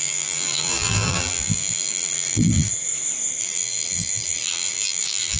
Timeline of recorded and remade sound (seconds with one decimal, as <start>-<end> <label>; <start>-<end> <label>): 0.0-2.7 remade; 2.7-3.4 recorded; 3.4-5.4 remade